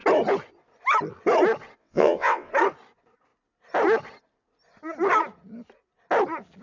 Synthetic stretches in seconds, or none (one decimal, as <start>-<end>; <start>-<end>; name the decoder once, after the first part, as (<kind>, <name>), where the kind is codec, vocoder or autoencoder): 1.8-2.5 (vocoder, WaveNeXt)

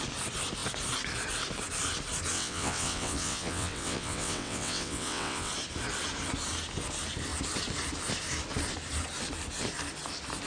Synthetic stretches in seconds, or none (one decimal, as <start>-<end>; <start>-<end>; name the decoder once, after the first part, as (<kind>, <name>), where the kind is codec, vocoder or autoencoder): 2.3-5.5 (vocoder, WaveNeXt)

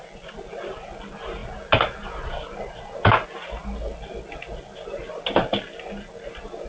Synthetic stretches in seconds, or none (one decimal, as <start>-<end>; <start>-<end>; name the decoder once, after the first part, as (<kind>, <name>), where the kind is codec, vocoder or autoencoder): none

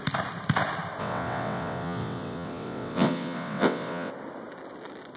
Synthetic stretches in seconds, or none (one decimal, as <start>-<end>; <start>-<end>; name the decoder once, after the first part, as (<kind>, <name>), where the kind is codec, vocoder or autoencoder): 1.0-4.1 (vocoder, WaveNeXt)

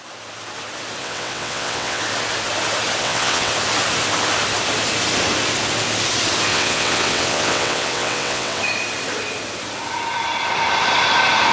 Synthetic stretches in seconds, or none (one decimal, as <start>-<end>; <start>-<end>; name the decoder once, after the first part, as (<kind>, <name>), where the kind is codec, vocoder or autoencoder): 1.0-2.0 (vocoder, WaveNeXt); 3.0-3.5; 6.5-8.6